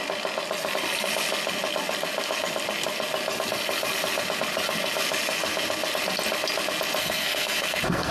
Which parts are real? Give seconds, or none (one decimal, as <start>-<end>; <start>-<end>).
0.0-7.0